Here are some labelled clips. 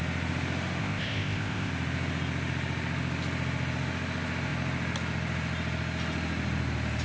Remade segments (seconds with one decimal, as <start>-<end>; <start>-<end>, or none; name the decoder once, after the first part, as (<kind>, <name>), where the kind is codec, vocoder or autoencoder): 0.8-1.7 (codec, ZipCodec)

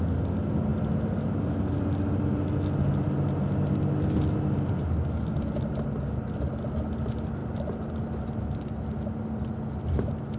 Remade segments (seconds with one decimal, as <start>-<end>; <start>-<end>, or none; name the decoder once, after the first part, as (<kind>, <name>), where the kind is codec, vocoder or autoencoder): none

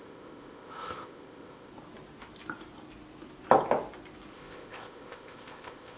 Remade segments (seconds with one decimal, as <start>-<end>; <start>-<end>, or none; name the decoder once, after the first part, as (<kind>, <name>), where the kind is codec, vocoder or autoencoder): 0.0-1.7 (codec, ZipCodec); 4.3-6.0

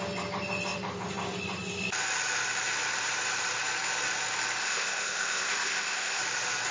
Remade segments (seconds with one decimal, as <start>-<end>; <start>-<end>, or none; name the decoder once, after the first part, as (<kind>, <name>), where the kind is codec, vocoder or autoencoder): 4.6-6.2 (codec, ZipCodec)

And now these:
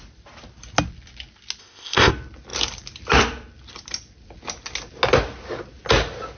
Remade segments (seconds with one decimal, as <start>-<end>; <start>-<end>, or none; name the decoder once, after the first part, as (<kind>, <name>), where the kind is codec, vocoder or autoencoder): 1.6-2.1 (codec, ZipCodec)